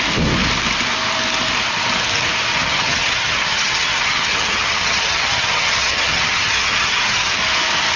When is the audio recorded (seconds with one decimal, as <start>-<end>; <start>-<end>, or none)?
0.0-2.5; 7.3-8.0